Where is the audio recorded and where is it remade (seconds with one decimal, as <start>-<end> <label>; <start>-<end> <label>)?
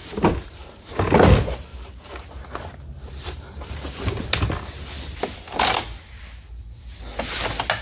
0.0-1.7 recorded; 1.7-4.2 remade; 4.2-7.8 recorded